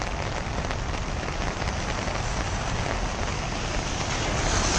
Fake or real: real